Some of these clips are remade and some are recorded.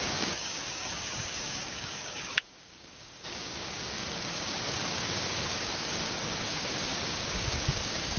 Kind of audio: remade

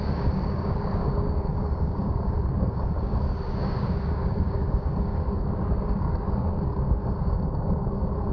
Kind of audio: remade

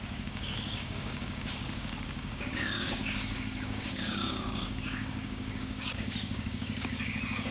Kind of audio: remade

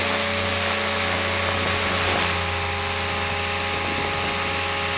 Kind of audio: recorded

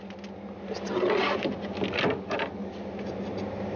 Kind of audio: recorded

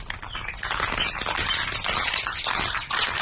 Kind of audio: recorded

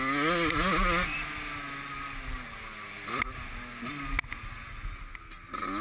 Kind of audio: recorded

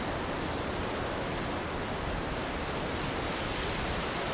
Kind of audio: recorded